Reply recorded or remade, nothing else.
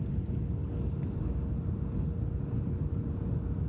recorded